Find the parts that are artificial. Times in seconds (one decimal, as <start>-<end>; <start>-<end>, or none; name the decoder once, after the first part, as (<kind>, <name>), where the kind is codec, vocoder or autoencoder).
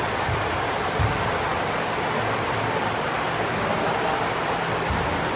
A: none